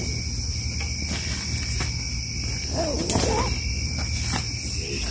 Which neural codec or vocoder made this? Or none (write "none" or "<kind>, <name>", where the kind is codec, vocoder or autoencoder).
none